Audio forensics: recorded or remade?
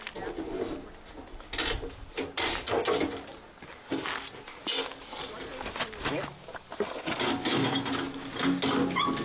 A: recorded